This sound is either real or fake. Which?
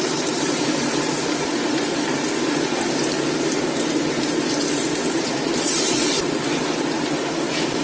fake